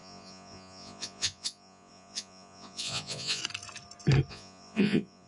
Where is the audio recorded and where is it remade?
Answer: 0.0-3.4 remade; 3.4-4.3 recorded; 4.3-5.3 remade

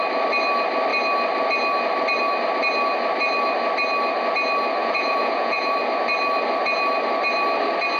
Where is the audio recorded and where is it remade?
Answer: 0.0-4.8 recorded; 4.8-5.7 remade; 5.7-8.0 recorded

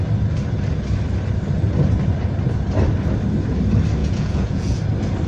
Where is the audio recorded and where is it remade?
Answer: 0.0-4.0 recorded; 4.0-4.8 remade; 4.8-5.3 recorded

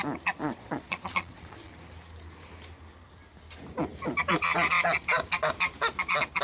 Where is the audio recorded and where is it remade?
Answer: 0.0-0.4 recorded; 0.4-1.7 remade; 1.7-6.4 recorded